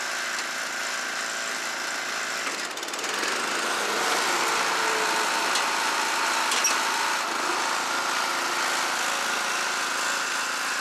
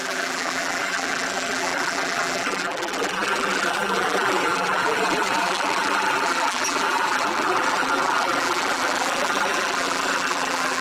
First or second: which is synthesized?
second